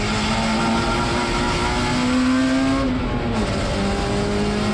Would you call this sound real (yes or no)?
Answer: yes